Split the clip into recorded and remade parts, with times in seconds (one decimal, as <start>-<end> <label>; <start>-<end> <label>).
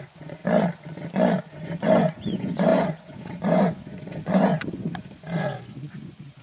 0.0-0.4 remade; 0.4-1.4 recorded; 1.4-6.4 remade